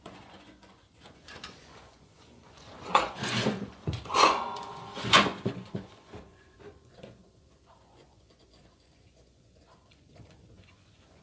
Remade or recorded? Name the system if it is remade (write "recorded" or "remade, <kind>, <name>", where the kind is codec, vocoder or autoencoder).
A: remade, vocoder, Vocos